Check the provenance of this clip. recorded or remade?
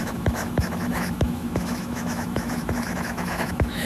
remade